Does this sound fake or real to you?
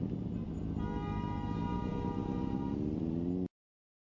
real